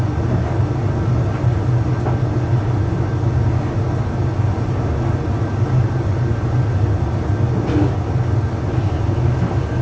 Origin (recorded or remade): recorded